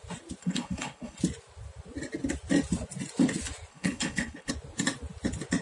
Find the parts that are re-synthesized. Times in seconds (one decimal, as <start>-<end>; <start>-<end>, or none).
0.4-1.2; 3.7-4.5